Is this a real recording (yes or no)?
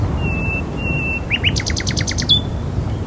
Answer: yes